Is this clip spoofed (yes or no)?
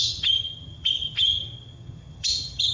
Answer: yes